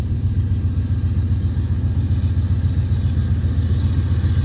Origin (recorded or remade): recorded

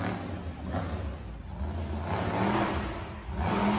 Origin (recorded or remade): recorded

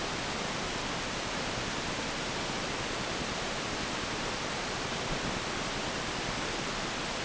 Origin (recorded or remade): recorded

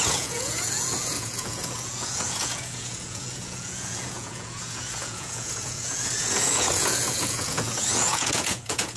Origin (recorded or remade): remade